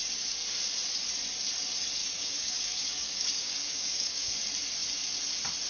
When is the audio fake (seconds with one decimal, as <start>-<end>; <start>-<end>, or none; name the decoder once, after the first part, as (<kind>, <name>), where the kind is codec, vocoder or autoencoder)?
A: 2.0-4.3 (codec, DAC)